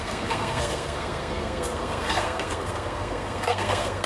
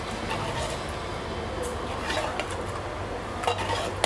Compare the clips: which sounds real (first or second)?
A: second